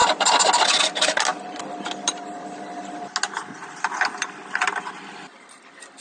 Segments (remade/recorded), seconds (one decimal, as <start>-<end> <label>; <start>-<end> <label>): 0.0-6.0 recorded